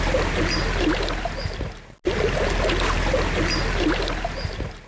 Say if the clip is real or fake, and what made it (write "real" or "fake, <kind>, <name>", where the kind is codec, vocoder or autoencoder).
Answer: real